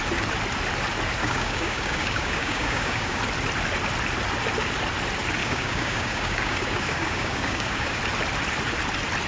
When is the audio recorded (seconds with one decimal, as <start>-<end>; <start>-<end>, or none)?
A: 0.0-1.2; 3.2-5.4; 8.0-9.3